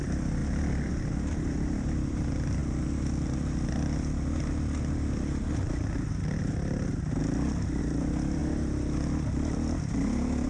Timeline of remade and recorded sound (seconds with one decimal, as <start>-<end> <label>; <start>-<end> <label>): 0.0-0.4 remade; 0.4-1.1 recorded; 1.1-2.6 remade; 2.6-7.8 recorded; 7.8-8.4 remade; 8.4-10.5 recorded